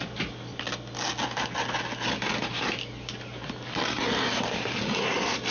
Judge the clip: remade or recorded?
recorded